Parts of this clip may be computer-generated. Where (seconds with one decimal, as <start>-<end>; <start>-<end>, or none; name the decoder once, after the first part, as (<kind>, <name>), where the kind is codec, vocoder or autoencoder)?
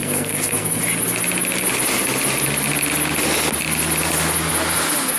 0.0-0.8 (codec, SNAC)